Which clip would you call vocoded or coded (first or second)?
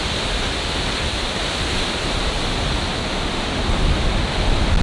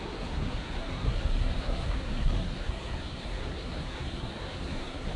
second